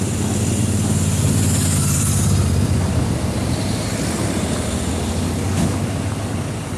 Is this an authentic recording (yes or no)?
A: yes